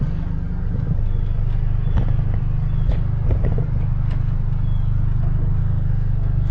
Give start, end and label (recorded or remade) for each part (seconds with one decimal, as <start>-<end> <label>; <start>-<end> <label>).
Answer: 0.0-5.6 recorded; 5.6-6.5 remade